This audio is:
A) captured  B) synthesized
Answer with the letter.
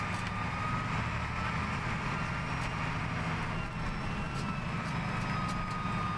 A